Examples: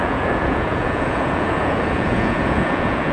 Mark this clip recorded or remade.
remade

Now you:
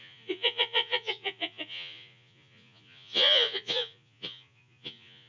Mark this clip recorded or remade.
remade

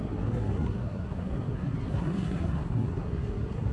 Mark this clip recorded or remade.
remade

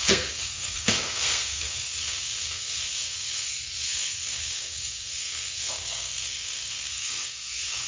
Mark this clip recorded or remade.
remade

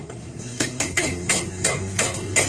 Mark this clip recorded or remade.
remade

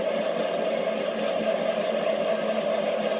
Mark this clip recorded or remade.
recorded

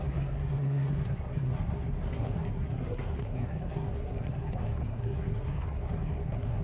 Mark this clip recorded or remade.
remade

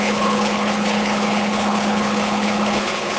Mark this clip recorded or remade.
remade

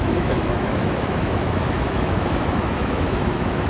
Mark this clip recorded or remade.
remade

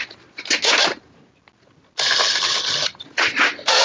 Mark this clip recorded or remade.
recorded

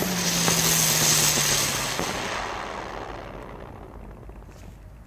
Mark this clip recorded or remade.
recorded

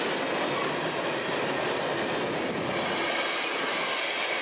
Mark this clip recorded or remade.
recorded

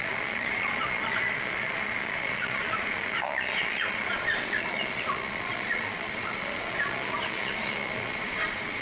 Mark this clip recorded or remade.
remade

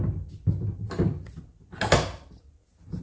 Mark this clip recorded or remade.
recorded